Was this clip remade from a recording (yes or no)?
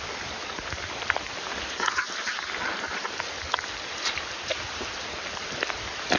no